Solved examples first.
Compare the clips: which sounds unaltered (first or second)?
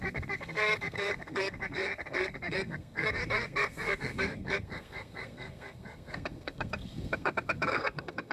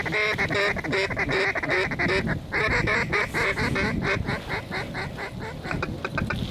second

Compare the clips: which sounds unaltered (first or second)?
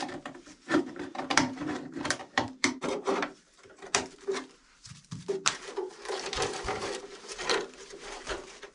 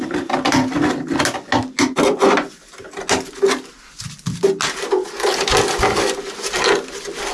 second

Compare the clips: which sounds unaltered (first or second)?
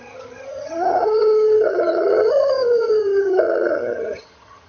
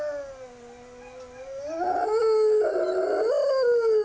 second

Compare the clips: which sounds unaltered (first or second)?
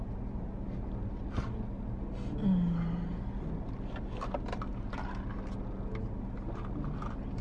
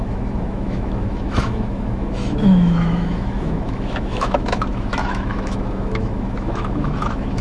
first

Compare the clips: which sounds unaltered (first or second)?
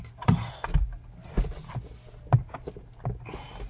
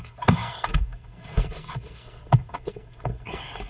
first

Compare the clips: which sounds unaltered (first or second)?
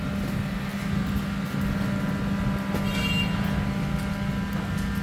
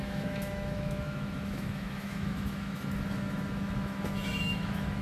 first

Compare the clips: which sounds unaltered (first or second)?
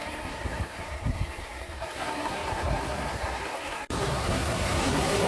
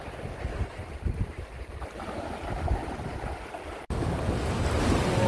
second